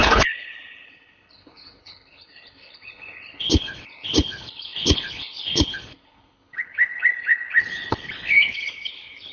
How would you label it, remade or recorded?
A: remade